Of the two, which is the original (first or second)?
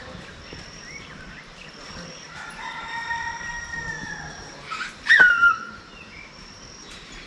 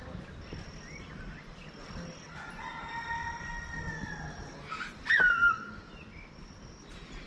second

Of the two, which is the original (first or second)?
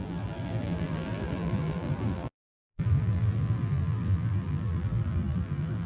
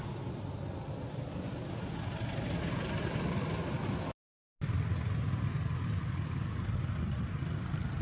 second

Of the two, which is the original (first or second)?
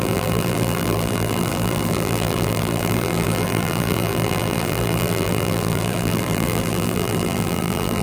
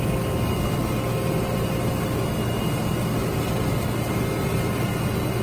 second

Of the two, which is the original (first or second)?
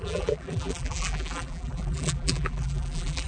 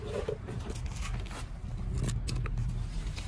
second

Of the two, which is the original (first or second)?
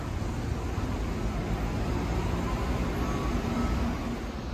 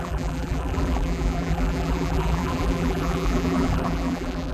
first